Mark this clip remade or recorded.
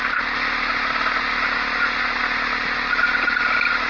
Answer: recorded